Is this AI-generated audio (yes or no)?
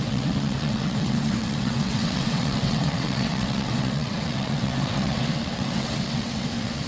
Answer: yes